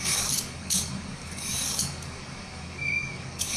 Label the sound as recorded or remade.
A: remade